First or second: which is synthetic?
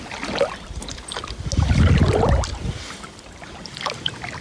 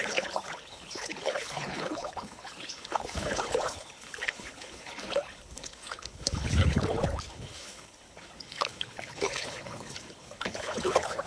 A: second